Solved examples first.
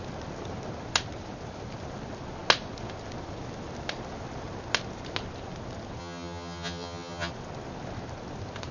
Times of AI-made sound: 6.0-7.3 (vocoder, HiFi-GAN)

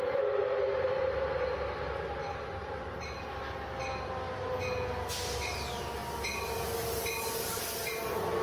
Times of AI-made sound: 2.2-3.2 (vocoder, BigVGAN v2)

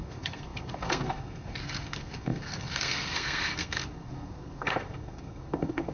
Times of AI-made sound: 0.0-5.9 (codec, SNAC)

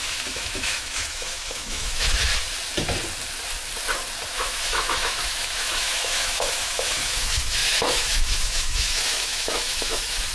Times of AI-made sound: 0.0-2.3 (autoencoder, DAC-VAE); 4.3-10.3

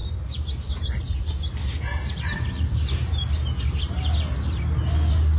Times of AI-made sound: none